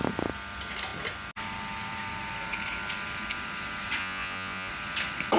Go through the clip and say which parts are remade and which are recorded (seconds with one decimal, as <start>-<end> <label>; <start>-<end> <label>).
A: 0.0-4.0 recorded; 4.0-4.7 remade; 4.7-5.4 recorded